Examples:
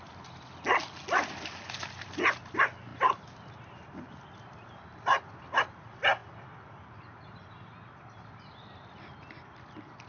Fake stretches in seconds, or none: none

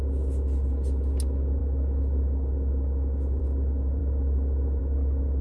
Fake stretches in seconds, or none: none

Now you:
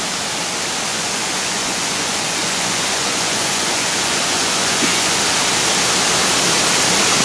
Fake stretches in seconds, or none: 0.9-5.2 (vocoder, Vocos)